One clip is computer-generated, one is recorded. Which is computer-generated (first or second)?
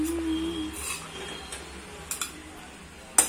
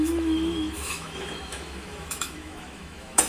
second